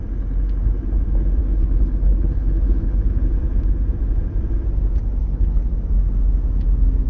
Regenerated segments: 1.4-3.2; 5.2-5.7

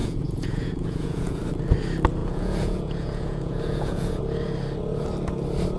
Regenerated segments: 0.0-1.4; 2.2-4.2

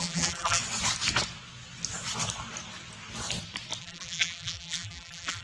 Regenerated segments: 0.0-0.6; 3.8-5.4

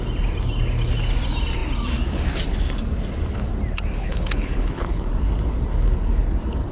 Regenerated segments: 4.0-5.1

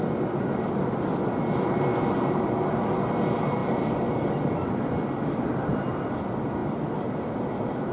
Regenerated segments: none

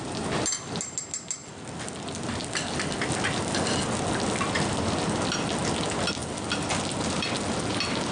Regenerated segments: none

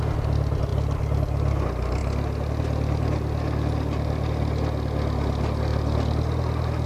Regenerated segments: none

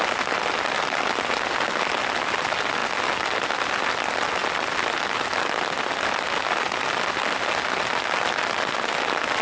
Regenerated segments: none